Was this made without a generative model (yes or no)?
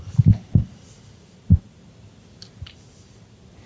yes